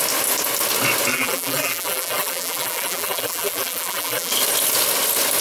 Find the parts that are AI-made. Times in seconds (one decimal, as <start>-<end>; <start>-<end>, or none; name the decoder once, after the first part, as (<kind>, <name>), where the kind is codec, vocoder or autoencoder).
1.1-4.3 (vocoder, BigVGAN v2)